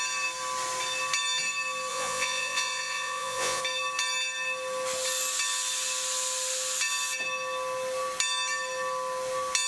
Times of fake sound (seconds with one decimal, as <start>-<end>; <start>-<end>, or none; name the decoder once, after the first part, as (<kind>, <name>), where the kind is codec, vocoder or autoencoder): 1.9-3.6 (vocoder, Vocos)

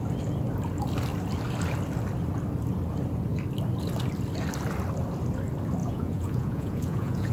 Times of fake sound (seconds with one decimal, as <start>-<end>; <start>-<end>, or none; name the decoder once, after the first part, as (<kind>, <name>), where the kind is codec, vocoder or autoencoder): 5.8-7.3 (vocoder, Vocos)

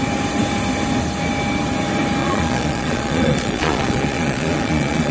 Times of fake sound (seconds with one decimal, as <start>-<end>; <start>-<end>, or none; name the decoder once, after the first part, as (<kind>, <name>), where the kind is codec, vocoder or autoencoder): 2.2-5.1 (vocoder, Vocos)

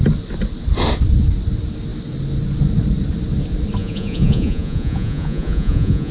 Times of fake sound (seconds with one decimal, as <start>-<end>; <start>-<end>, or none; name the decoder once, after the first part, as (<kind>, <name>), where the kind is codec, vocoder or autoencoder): 3.8-6.1 (vocoder, Vocos)

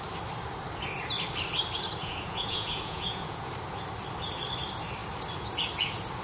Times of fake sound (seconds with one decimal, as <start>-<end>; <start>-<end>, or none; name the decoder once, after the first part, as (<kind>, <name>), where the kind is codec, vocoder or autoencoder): 2.0-3.5 (vocoder, Vocos)

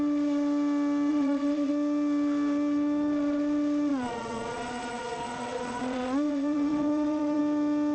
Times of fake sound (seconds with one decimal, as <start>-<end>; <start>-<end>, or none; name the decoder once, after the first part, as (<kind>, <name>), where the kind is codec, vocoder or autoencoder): 1.1-1.7 (vocoder, Vocos); 3.9-7.4

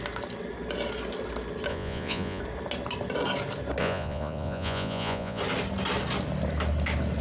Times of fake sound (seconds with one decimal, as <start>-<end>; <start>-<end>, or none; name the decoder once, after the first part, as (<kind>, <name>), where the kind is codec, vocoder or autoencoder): 1.7-2.4 (vocoder, Vocos); 3.8-5.4